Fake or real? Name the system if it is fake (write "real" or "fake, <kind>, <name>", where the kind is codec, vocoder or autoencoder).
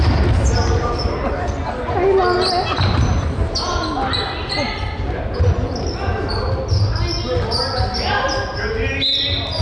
real